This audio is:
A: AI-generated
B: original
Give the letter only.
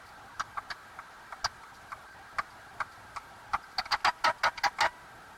B